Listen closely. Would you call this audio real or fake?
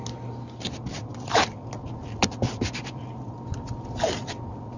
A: real